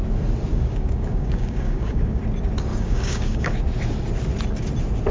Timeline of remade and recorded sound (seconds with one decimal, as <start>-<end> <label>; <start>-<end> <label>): 0.0-0.5 recorded; 0.5-2.2 remade; 2.2-2.7 recorded; 2.7-3.5 remade; 3.5-5.1 recorded